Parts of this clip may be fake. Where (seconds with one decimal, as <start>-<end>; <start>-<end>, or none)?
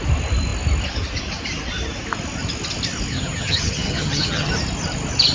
3.1-4.5